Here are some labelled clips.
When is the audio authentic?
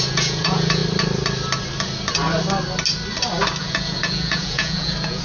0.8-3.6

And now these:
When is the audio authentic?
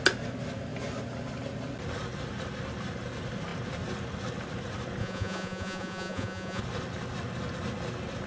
0.0-5.0; 6.6-8.3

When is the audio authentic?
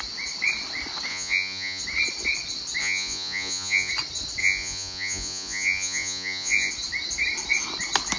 0.0-1.1; 1.8-2.8; 3.9-4.4; 6.7-8.2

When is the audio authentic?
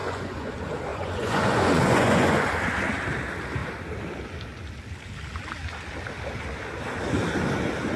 0.5-0.9; 2.5-8.0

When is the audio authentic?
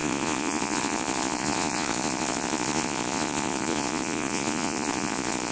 none